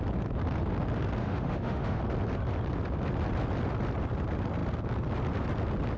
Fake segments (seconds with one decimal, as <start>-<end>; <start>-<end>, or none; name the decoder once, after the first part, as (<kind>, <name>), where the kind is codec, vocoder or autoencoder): 1.2-2.0 (autoencoder, DAC-VAE)